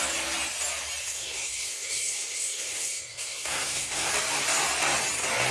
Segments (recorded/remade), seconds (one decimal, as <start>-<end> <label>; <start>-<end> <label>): 0.0-1.0 recorded; 1.0-4.1 remade; 4.1-5.5 recorded